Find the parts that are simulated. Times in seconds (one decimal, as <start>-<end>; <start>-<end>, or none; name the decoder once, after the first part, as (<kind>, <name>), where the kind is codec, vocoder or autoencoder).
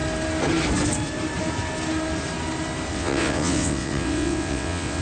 2.9-5.0 (vocoder, WaveNeXt)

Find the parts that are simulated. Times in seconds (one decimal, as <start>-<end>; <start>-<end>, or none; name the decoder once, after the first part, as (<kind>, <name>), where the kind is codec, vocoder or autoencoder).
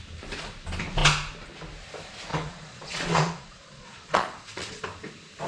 2.3-4.8 (vocoder, Vocos)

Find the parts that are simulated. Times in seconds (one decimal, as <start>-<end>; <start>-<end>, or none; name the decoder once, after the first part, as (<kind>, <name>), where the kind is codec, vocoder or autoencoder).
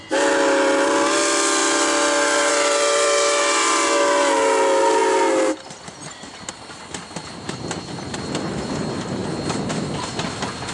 none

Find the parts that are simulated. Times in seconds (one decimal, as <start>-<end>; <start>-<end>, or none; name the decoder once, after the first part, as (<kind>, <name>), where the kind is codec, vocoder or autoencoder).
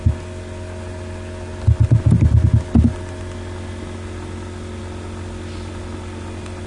none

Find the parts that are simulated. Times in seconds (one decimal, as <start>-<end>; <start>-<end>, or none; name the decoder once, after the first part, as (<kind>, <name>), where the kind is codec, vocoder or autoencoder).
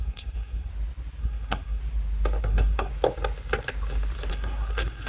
0.0-0.7 (codec, SNAC); 1.2-1.8; 2.4-2.9; 4.3-5.1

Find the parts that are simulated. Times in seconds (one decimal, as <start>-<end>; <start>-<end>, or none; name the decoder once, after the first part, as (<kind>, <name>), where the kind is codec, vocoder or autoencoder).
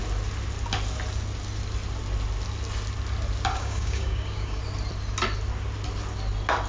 3.5-4.6 (codec, DAC)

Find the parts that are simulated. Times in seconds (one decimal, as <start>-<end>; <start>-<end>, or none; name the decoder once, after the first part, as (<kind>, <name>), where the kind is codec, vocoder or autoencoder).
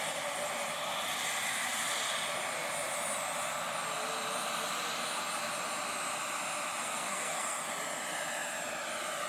6.8-7.7 (codec, SNAC)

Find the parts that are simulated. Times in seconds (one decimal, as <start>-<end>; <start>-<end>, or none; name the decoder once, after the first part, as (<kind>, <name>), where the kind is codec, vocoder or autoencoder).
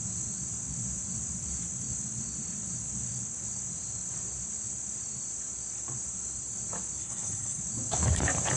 7.0-7.6 (codec, HILCodec)